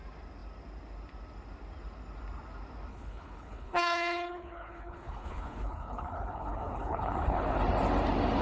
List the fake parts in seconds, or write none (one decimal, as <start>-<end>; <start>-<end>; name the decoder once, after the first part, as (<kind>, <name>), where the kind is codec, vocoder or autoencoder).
2.9-7.6 (codec, HILCodec)